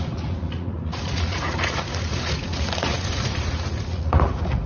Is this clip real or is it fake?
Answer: fake